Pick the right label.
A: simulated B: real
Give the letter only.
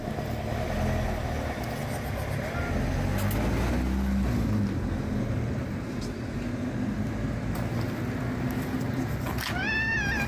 B